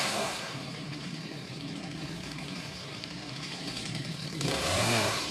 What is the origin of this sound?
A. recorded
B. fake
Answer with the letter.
B